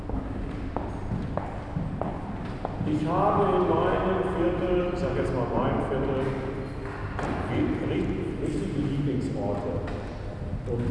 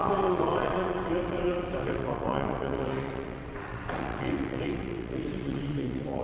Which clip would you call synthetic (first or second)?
second